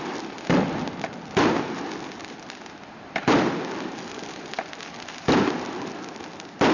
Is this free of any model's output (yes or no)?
no